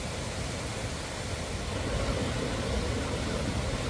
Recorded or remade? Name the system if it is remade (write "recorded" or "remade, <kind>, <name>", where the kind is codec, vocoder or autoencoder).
recorded